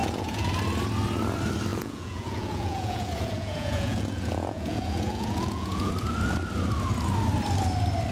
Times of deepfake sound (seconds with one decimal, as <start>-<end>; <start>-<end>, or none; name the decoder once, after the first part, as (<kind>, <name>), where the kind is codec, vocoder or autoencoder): 0.0-0.5 (vocoder, Vocos); 1.7-5.9